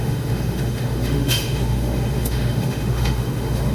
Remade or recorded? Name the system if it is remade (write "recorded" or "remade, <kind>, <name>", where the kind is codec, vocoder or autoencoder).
remade, autoencoder, DAC-VAE